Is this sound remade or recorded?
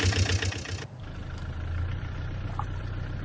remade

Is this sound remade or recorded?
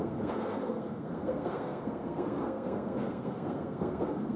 remade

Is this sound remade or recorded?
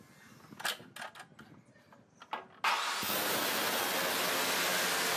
recorded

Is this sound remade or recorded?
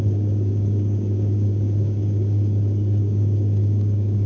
remade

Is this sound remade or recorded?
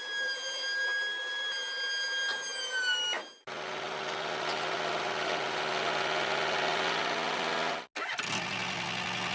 recorded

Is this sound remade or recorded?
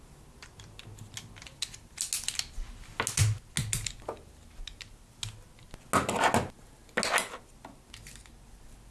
recorded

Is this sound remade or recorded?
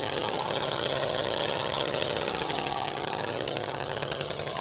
remade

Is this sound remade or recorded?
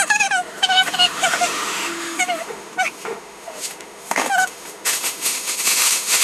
remade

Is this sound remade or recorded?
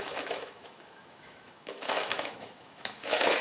remade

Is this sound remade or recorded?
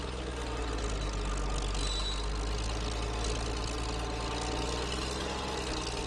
recorded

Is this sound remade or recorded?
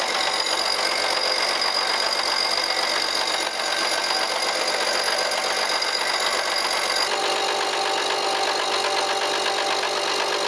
recorded